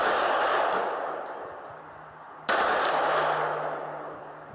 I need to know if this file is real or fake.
real